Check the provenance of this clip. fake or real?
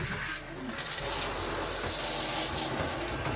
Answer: real